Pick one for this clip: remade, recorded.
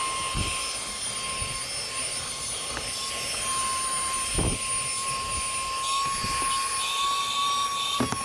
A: recorded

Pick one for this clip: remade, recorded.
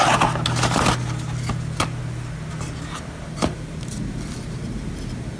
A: recorded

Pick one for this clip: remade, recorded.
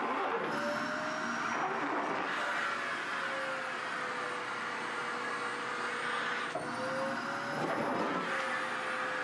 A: recorded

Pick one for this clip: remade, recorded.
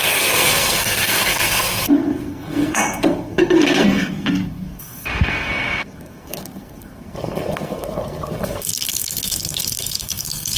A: remade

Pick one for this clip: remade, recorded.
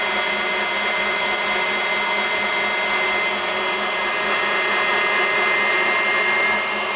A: recorded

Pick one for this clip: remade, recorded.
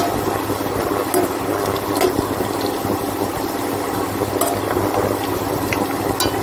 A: recorded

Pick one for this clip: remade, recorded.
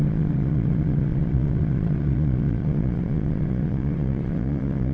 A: remade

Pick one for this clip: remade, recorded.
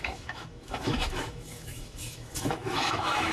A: remade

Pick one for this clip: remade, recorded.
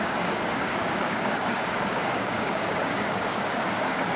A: remade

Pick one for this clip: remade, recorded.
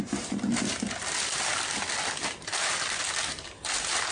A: recorded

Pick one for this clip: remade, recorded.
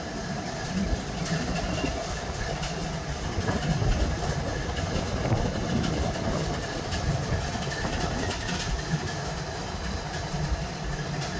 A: recorded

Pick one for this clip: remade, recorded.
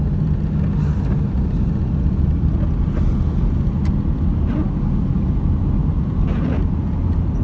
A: recorded